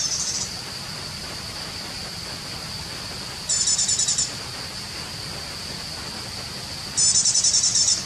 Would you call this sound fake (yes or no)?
no